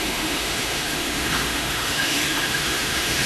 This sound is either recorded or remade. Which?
remade